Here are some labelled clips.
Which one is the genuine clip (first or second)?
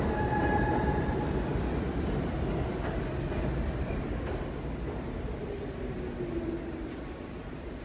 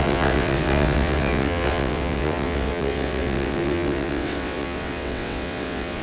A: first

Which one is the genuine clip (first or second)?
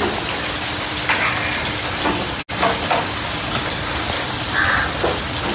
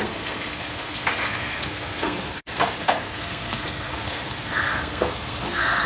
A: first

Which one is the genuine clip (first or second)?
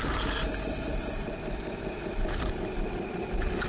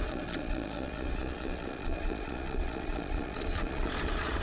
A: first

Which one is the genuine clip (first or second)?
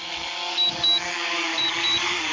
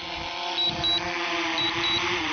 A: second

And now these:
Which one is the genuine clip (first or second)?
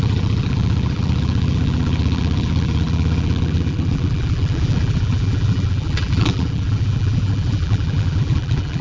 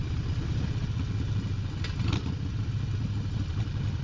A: second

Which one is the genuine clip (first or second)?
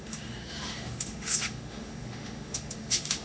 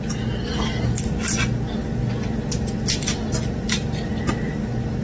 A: second